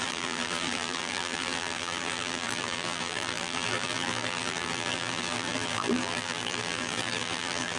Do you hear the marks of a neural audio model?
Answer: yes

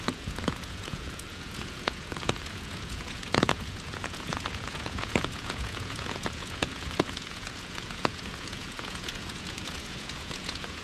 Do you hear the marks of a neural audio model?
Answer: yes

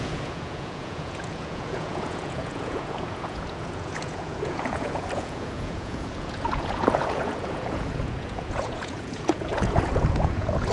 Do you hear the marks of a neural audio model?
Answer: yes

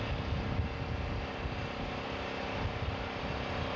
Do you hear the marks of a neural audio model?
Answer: no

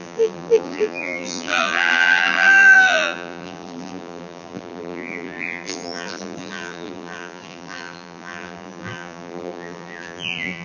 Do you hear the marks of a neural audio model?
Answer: yes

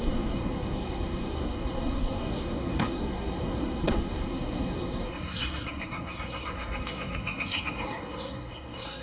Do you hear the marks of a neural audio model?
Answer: yes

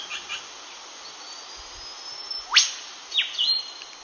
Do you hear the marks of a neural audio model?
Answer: no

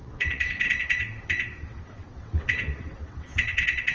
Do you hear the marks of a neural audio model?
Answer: yes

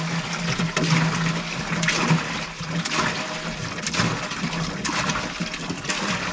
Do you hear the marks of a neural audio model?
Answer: no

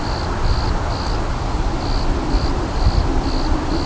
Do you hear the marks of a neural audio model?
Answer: no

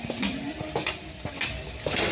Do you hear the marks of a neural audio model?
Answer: no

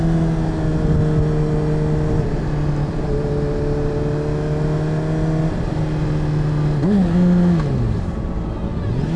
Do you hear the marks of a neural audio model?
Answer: no